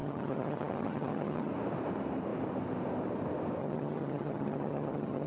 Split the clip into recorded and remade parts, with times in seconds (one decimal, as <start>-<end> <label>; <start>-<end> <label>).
0.0-1.5 remade; 1.5-3.6 recorded; 3.6-5.3 remade